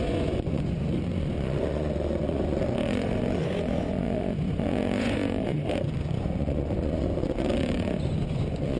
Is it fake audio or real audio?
fake